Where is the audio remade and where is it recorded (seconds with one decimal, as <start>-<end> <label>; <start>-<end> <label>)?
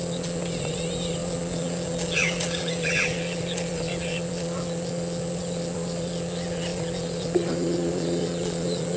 0.0-9.0 remade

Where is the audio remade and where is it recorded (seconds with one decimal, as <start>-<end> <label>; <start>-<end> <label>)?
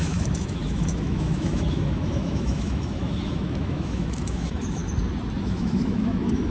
0.0-4.8 remade; 4.8-5.4 recorded; 5.4-6.5 remade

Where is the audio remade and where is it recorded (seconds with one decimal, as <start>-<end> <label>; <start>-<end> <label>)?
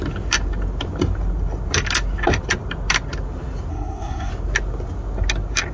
0.0-3.7 recorded; 3.7-4.3 remade; 4.3-5.7 recorded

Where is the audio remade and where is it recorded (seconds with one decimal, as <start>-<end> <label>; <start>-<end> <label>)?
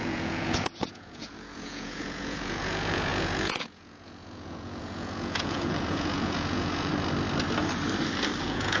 0.0-6.9 remade; 6.9-8.4 recorded; 8.4-8.8 remade